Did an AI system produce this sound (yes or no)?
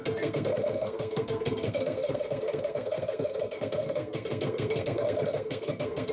yes